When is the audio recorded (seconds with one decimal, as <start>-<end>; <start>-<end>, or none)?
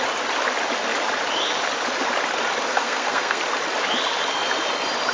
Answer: 0.0-2.7; 3.4-5.1